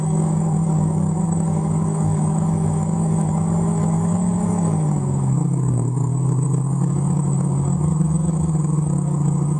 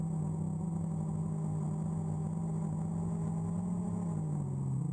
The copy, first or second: first